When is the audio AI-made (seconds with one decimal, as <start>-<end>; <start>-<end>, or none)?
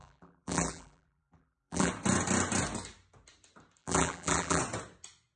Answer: 0.0-1.9; 3.8-4.6